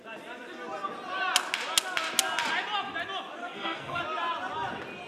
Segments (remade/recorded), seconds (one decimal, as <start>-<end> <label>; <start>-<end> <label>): 0.0-3.4 recorded; 3.4-4.0 remade; 4.0-5.1 recorded